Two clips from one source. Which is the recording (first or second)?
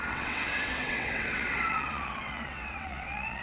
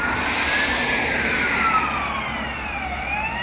second